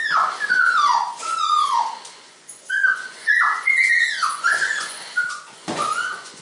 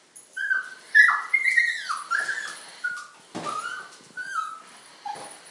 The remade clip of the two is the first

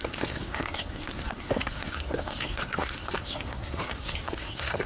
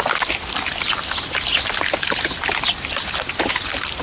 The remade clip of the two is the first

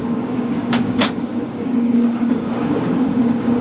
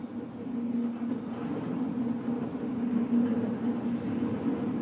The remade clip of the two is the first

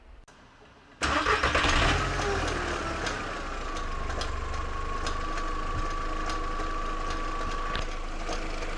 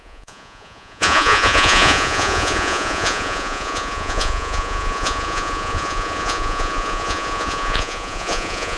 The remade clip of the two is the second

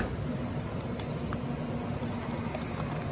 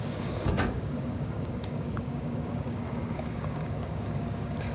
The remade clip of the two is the second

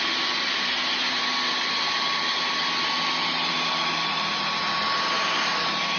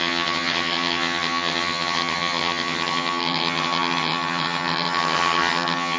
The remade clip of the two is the second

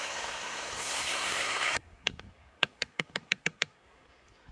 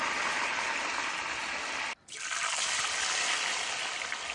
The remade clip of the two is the first